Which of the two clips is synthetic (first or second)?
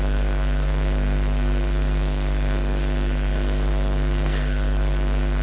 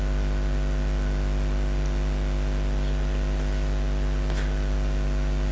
first